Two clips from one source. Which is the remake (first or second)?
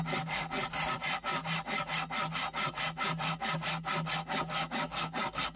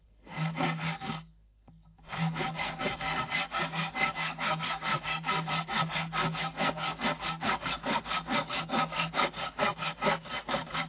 second